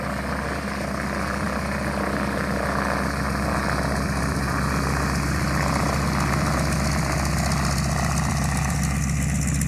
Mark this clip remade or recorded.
recorded